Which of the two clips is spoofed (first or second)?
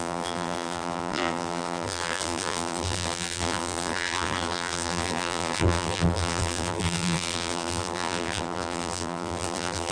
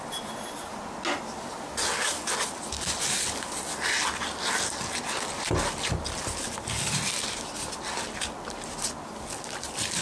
first